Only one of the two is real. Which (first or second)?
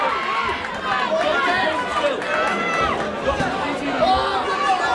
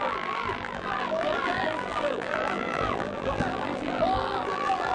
first